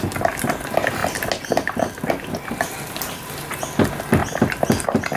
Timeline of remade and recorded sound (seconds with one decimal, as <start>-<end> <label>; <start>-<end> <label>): 0.0-5.2 recorded